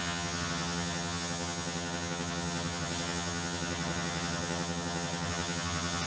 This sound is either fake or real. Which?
fake